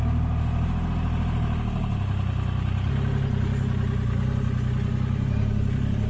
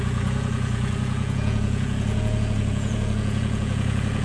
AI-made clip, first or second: second